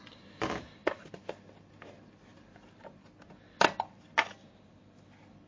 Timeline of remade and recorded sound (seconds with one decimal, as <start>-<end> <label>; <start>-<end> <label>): 0.0-5.5 recorded

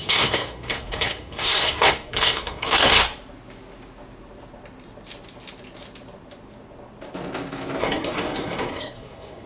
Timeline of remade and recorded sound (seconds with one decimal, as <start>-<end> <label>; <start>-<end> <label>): 0.0-3.0 remade; 3.0-7.8 recorded; 7.8-9.5 remade

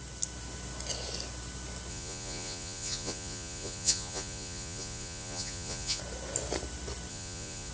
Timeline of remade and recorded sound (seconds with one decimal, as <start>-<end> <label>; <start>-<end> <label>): 0.0-1.9 recorded; 1.9-6.0 remade; 6.0-7.1 recorded; 7.1-7.7 remade

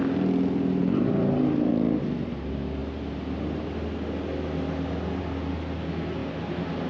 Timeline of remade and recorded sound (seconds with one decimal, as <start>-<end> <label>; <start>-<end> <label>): 0.0-0.8 recorded; 0.8-1.7 remade; 1.7-6.2 recorded; 6.2-6.9 remade

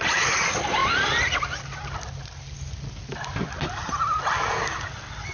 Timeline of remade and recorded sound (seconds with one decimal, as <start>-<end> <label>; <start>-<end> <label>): 0.0-5.3 recorded